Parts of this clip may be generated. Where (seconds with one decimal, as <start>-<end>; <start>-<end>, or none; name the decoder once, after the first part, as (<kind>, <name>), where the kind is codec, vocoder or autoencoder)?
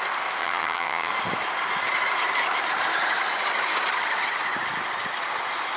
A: 0.4-1.1 (vocoder, HiFi-GAN)